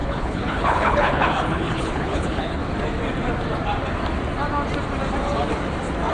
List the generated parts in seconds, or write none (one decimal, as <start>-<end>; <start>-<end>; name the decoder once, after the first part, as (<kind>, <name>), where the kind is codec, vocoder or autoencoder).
0.0-2.6 (codec, HILCodec)